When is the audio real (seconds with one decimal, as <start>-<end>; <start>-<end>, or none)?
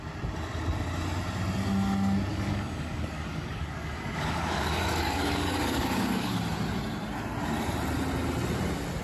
0.0-2.3; 6.4-9.0